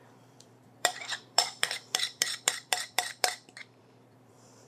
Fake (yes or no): yes